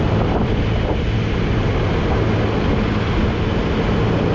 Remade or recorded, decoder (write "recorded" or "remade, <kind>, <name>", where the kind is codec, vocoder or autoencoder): recorded